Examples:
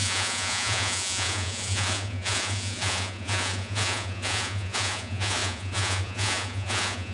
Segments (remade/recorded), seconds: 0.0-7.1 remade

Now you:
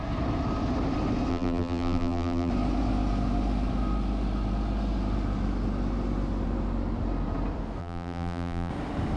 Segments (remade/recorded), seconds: 0.0-1.3 recorded; 1.3-2.5 remade; 2.5-7.8 recorded; 7.8-8.7 remade; 8.7-9.2 recorded

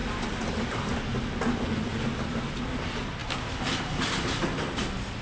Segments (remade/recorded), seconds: 0.0-5.2 recorded

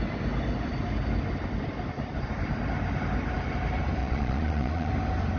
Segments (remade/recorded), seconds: 0.0-4.0 recorded; 4.0-4.9 remade; 4.9-5.4 recorded

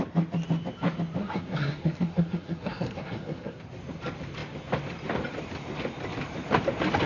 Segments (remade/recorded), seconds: 0.0-1.2 recorded; 1.2-3.6 remade; 3.6-7.1 recorded

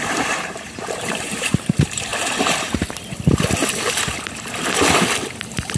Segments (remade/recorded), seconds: 0.0-2.1 remade; 2.1-5.8 recorded

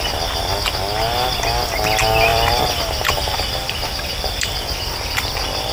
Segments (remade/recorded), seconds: 0.0-2.3 recorded; 2.3-3.7 remade; 3.7-5.7 recorded

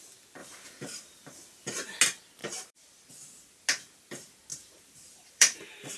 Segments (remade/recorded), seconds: 0.0-0.4 recorded; 0.4-2.0 remade; 2.0-2.4 recorded; 2.4-3.1 remade; 3.1-4.5 recorded; 4.5-6.0 remade